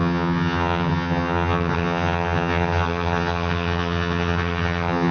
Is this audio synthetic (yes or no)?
yes